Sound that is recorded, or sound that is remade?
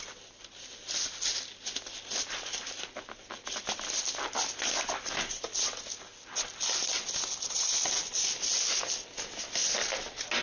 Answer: recorded